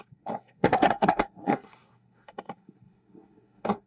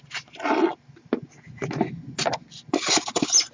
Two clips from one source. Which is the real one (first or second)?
second